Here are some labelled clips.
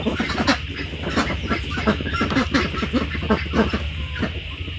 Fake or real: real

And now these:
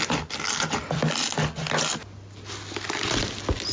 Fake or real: real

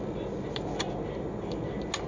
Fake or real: real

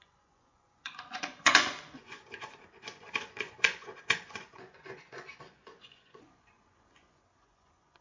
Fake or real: fake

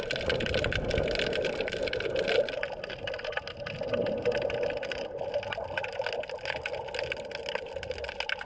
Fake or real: real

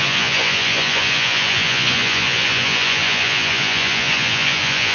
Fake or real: fake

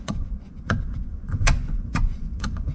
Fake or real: fake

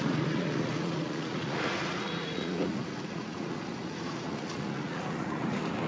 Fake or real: fake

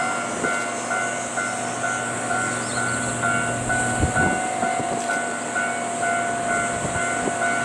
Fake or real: real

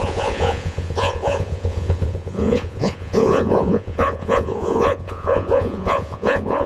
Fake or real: fake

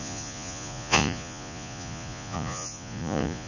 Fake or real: fake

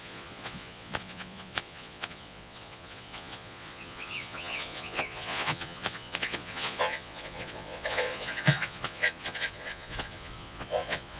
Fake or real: fake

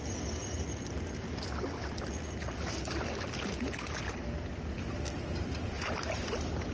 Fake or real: real